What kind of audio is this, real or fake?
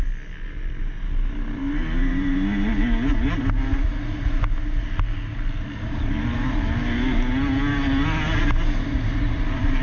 real